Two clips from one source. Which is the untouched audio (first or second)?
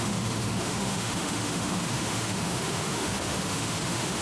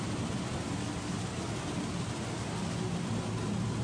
second